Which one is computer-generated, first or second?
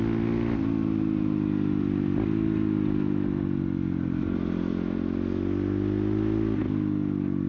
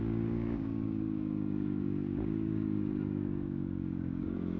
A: second